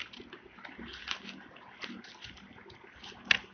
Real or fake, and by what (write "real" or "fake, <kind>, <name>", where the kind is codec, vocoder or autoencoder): real